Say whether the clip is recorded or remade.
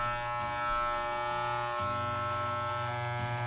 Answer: recorded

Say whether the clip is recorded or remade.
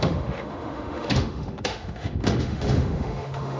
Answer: remade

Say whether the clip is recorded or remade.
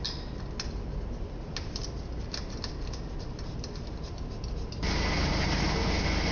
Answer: recorded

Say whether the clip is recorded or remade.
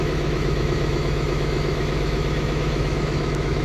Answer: remade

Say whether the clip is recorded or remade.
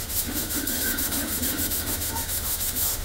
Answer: remade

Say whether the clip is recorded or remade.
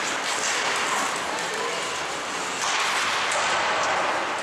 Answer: recorded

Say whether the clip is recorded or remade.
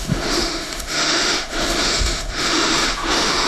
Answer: remade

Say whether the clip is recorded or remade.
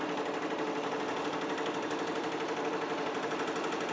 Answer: recorded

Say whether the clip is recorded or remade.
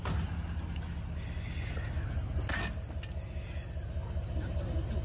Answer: recorded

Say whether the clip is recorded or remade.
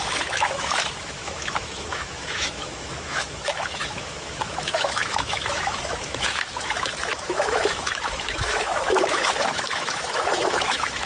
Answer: remade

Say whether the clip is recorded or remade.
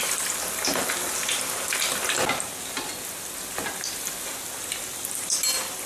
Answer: recorded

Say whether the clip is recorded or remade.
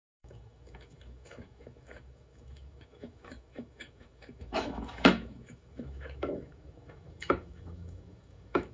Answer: remade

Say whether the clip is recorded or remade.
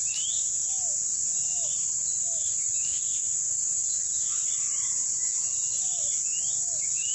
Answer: recorded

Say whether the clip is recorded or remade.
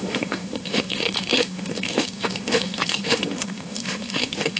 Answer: remade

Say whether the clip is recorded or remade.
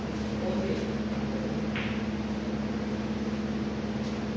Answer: recorded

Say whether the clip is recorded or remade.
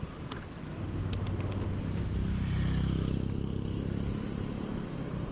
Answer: recorded